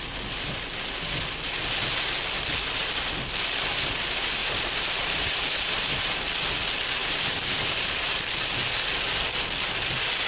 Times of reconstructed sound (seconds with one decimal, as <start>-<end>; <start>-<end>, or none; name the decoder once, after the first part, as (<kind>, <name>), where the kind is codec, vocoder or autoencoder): 4.4-6.1 (vocoder, BigVGAN v2); 7.0-8.2